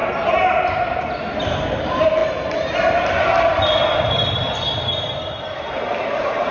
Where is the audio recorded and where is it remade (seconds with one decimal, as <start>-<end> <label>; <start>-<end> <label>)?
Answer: 0.0-1.3 recorded; 1.3-3.8 remade; 3.8-5.6 recorded; 5.6-6.5 remade